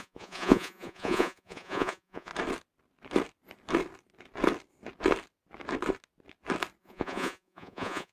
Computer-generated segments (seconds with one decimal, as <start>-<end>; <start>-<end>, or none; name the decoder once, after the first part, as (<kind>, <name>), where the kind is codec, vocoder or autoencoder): 0.0-2.3 (vocoder, Vocos); 6.8-8.1